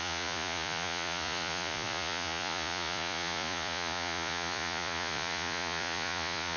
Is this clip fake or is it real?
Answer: fake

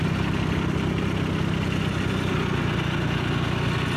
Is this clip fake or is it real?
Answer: real